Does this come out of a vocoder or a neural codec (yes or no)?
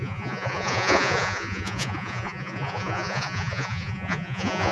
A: yes